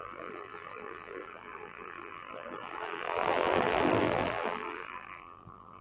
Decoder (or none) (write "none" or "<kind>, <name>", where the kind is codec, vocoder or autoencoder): vocoder, BigVGAN v2